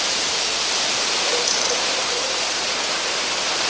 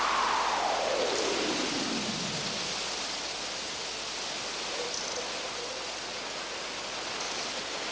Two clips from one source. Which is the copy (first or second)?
first